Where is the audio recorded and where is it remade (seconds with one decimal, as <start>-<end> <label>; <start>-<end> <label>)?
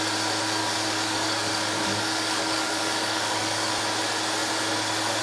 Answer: 0.0-0.6 recorded; 0.6-3.7 remade; 3.7-5.2 recorded